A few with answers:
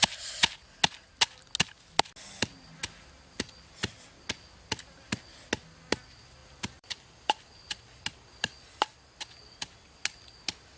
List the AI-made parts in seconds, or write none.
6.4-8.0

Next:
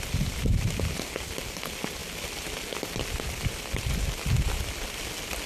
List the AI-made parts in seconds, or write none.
none

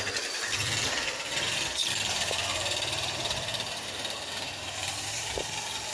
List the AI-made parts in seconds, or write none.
1.8-5.3

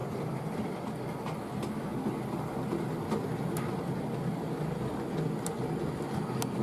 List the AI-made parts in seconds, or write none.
0.0-1.0

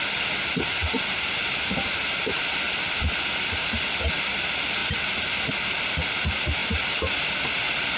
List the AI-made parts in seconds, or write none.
0.8-2.8; 6.6-8.0

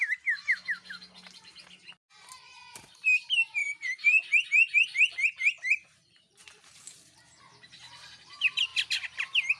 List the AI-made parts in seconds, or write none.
3.6-7.4

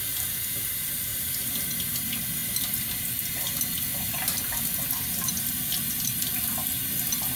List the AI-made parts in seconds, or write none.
none